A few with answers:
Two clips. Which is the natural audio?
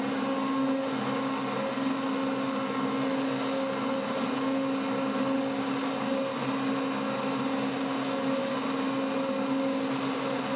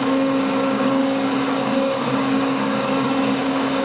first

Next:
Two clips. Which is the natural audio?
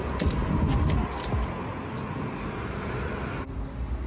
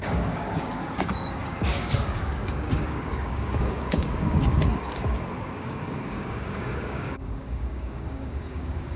first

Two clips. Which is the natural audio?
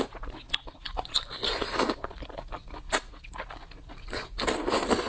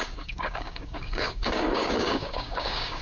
first